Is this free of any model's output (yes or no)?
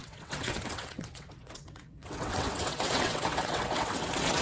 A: no